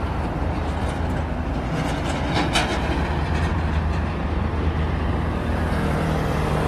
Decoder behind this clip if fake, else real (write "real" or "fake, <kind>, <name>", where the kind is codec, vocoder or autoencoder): fake, vocoder, BigVGAN v2